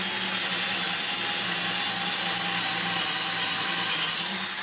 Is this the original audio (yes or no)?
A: yes